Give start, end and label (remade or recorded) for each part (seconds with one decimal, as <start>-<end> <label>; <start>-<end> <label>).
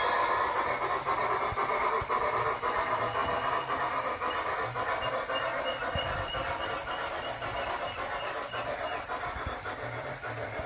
0.0-10.7 recorded